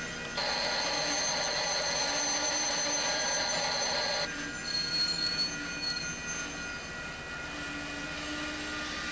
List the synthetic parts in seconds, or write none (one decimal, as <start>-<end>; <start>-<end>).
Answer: none